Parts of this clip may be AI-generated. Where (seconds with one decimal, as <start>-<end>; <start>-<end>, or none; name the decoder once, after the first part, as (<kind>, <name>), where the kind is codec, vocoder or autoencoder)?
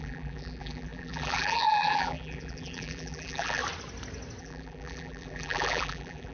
0.0-3.6 (vocoder, BigVGAN v2); 4.4-6.3